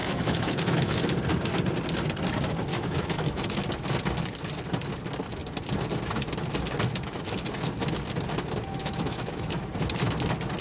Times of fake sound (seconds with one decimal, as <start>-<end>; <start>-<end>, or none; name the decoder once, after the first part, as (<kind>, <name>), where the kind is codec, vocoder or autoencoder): 0.0-1.0 (autoencoder, DAC-VAE); 2.7-3.6; 8.8-9.6